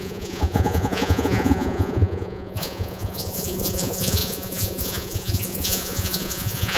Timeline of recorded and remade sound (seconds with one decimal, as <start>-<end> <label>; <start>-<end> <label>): 0.0-6.8 remade